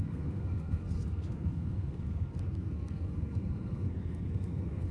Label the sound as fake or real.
fake